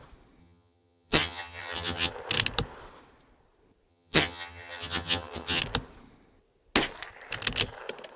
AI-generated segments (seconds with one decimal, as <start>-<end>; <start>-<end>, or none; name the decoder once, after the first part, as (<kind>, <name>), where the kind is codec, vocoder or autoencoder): 0.4-2.1 (vocoder, HiFi-GAN); 3.9-5.6